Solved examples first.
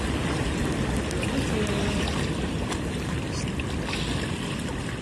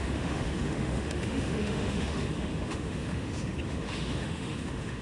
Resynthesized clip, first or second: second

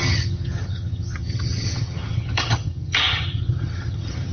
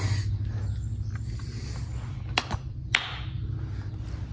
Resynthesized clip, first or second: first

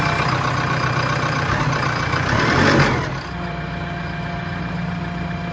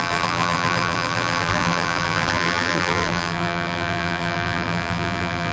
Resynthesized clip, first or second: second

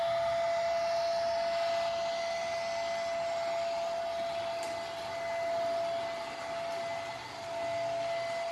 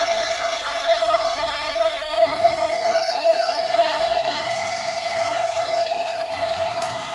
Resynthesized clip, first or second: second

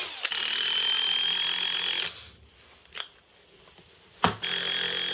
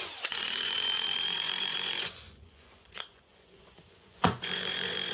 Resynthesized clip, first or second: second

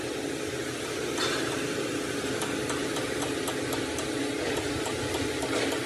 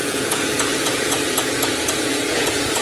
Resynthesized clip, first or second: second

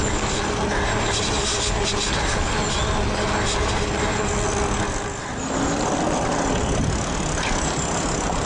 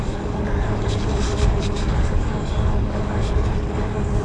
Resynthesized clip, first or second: second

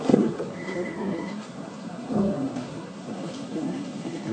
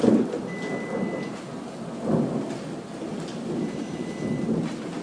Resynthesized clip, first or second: first